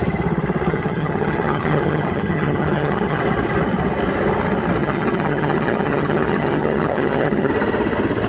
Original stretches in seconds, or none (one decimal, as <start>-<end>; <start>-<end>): 0.0-0.7; 3.2-4.8; 7.5-8.3